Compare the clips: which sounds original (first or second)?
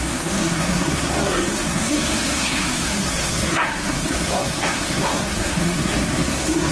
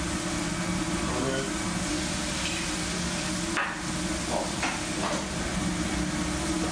second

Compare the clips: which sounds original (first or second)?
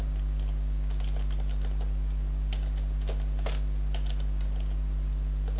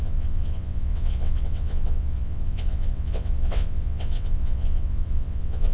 first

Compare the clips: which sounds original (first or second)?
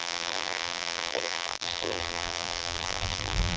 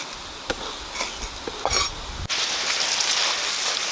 second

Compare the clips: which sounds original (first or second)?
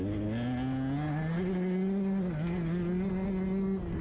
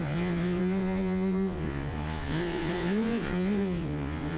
first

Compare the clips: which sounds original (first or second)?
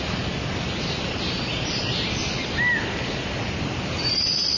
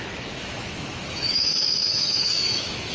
first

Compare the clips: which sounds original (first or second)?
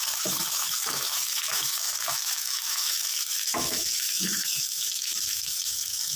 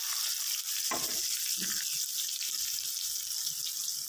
second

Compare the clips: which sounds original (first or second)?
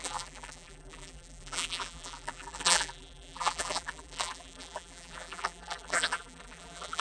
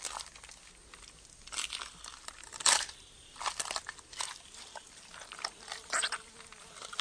second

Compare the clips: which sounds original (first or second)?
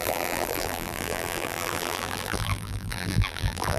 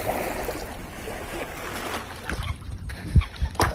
second